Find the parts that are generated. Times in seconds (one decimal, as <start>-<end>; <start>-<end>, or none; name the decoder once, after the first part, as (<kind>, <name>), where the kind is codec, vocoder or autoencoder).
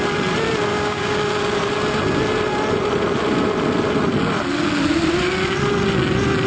0.7-1.2 (codec, DAC)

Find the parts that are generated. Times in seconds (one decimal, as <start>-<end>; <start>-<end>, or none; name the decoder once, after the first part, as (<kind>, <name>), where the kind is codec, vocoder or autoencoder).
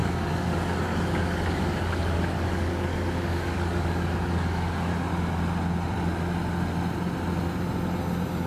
0.0-4.9 (codec, DAC)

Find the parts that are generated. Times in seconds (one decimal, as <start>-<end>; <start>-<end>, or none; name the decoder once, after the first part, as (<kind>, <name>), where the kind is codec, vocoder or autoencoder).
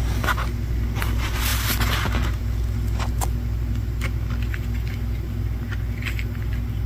none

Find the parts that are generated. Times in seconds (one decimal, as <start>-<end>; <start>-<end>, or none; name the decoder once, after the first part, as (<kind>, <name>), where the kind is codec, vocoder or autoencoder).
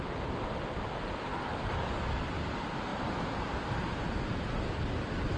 1.3-2.2 (codec, DAC)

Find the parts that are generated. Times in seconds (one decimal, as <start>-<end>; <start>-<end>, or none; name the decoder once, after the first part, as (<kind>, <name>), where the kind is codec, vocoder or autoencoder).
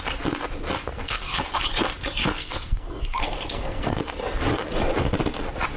0.9-1.5 (codec, SNAC); 2.2-4.0